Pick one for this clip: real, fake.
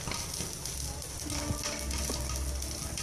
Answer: real